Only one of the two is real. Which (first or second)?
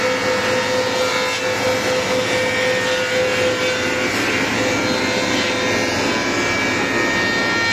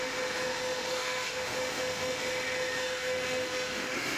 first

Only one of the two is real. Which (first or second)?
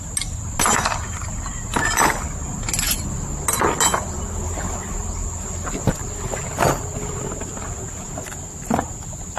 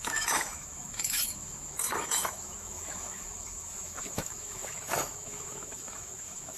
first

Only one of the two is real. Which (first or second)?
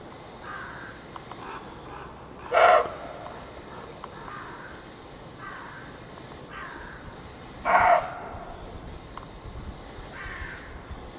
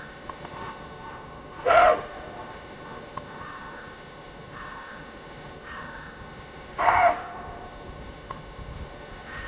first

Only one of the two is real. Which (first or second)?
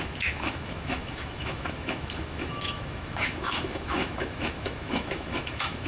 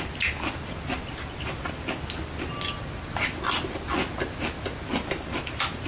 second